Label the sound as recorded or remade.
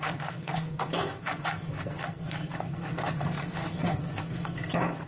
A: remade